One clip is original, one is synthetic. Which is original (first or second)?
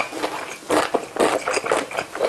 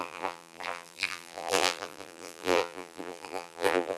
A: first